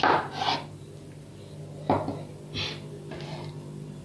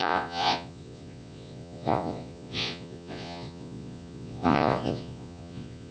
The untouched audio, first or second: first